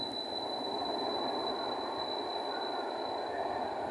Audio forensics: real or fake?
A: real